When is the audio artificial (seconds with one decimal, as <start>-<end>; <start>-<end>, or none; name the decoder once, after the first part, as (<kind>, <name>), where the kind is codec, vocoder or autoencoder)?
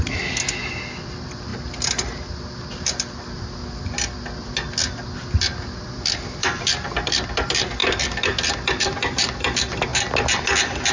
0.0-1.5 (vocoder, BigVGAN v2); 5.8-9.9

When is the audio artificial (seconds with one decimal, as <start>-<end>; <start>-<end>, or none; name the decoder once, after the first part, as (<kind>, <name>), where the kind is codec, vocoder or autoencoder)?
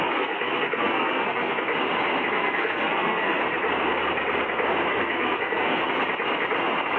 0.0-1.7 (codec, SNAC); 2.3-3.4; 4.9-5.8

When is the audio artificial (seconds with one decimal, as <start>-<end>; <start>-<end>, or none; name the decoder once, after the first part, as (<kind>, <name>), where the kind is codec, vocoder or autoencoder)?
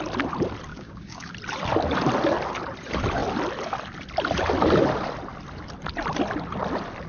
0.7-1.3 (codec, DAC)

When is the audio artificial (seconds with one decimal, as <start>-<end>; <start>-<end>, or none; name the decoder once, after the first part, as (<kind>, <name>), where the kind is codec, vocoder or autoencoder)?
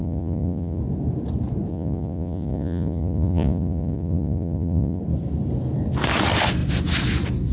0.0-0.8 (vocoder, Vocos); 1.7-5.0